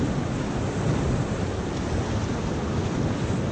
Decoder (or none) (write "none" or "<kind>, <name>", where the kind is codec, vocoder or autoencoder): none